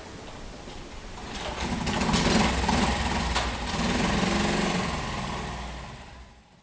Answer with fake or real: real